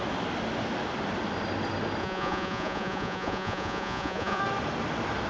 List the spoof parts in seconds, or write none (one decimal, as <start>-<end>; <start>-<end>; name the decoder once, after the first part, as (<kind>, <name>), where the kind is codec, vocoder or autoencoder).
2.0-4.4 (vocoder, Vocos)